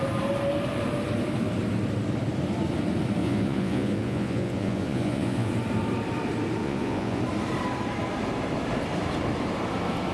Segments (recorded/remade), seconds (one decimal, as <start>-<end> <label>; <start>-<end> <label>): 0.0-3.2 recorded; 3.2-5.5 remade; 5.5-6.6 recorded; 6.6-7.2 remade; 7.2-10.1 recorded